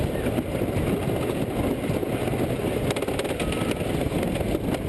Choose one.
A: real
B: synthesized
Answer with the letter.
A